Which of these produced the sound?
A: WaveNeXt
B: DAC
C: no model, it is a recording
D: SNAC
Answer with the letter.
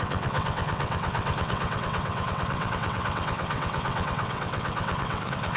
A